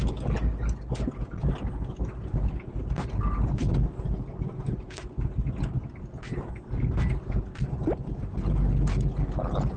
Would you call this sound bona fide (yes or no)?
yes